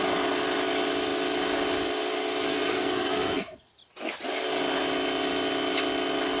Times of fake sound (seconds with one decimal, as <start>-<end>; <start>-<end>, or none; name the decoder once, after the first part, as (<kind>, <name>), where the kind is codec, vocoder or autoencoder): 2.5-3.7 (codec, SNAC)